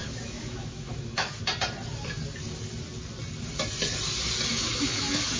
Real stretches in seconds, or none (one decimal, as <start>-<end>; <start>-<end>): 1.4-4.5